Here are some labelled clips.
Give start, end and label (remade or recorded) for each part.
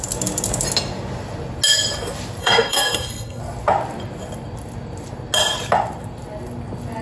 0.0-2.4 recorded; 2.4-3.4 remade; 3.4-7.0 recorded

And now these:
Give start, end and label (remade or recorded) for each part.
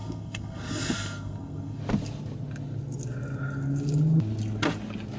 0.0-1.8 remade; 1.8-5.2 recorded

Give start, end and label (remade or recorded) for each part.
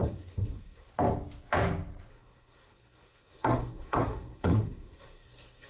0.0-0.9 remade; 0.9-2.1 recorded; 2.1-5.7 remade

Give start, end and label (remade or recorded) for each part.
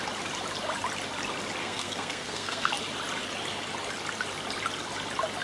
0.0-1.6 recorded; 1.6-2.7 remade; 2.7-5.4 recorded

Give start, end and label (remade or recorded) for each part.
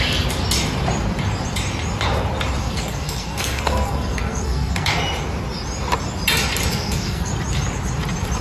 0.0-2.6 recorded; 2.6-5.0 remade; 5.0-6.7 recorded; 6.7-7.3 remade; 7.3-8.4 recorded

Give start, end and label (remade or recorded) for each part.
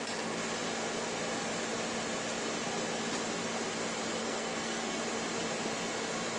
0.0-4.2 recorded; 4.2-5.0 remade; 5.0-6.4 recorded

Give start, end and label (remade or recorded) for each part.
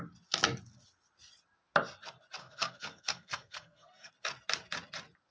0.0-2.4 recorded; 2.4-4.1 remade; 4.1-5.3 recorded